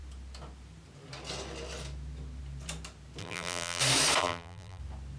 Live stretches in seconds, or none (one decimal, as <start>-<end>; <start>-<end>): 0.0-3.2; 3.8-4.2; 4.8-5.2